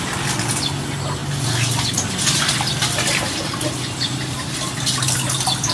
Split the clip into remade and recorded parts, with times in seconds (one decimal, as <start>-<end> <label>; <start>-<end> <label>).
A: 0.0-5.7 recorded

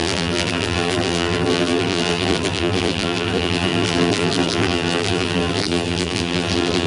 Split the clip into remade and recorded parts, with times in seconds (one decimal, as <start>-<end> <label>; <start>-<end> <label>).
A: 0.0-6.9 remade

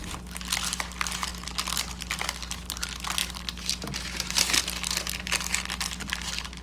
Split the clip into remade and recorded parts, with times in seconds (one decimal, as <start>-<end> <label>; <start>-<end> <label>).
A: 0.0-6.6 recorded

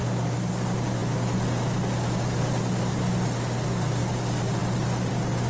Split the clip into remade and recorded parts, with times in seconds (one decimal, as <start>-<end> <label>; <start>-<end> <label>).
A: 0.0-5.5 recorded

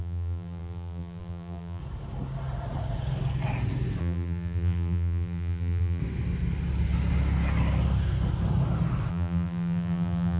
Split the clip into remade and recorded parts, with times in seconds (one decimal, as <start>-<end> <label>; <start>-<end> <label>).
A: 0.0-1.8 remade; 1.8-4.0 recorded; 4.0-6.0 remade; 6.0-9.1 recorded; 9.1-10.4 remade

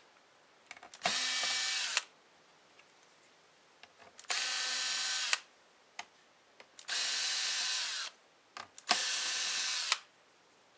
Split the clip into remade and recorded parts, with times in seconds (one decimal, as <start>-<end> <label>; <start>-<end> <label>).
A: 0.0-10.8 recorded